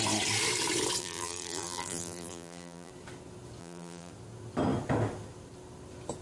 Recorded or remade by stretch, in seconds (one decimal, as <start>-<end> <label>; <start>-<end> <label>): 0.0-1.0 recorded; 1.0-2.9 remade; 2.9-3.6 recorded; 3.6-4.1 remade; 4.1-6.2 recorded